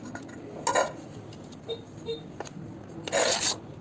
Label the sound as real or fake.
real